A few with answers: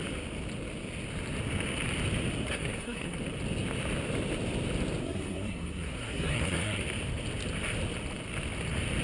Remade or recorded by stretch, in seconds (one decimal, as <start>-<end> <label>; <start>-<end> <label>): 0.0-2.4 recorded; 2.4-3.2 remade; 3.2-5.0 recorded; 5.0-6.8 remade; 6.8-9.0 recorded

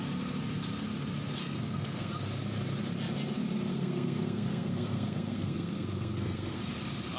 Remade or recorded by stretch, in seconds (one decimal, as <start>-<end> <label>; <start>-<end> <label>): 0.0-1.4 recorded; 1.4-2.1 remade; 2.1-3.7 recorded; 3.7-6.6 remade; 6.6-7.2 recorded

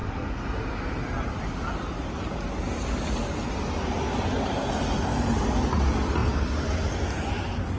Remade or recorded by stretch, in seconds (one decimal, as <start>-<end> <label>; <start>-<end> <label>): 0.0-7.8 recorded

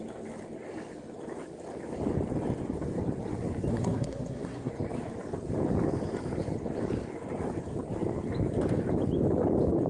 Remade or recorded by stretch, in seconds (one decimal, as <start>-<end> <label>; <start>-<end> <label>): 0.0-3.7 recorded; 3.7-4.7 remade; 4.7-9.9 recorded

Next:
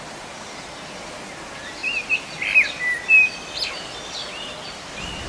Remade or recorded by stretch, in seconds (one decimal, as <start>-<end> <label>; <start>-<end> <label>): 0.0-5.3 recorded

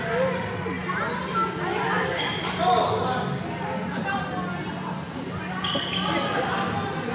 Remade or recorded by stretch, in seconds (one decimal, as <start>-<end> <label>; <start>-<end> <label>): 0.0-7.1 recorded

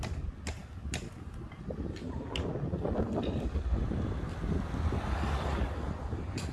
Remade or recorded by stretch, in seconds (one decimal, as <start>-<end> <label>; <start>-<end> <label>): 0.0-6.5 recorded